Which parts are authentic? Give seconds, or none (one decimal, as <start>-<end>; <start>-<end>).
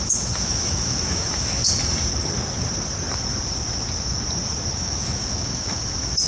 1.6-4.7